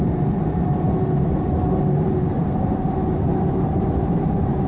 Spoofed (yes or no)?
yes